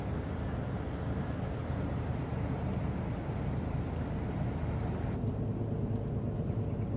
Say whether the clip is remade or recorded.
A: recorded